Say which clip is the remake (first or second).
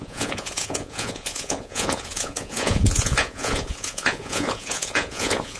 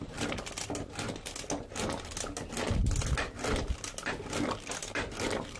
first